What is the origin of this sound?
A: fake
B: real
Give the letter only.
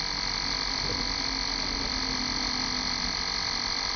B